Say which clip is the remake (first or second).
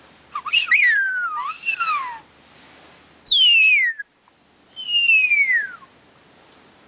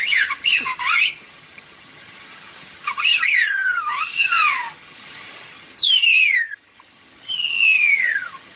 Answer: second